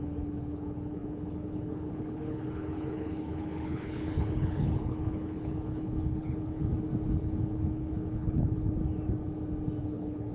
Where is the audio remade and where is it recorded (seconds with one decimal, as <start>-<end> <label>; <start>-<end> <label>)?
0.0-6.7 remade; 6.7-7.2 recorded; 7.2-8.8 remade; 8.8-9.8 recorded; 9.8-10.3 remade